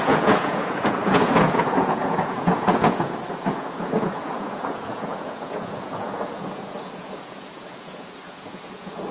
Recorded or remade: remade